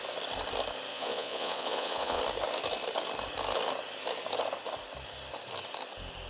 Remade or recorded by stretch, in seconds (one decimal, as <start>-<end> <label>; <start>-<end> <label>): 0.0-0.9 recorded; 0.9-2.2 remade; 2.2-6.3 recorded